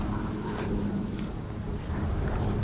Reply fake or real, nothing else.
fake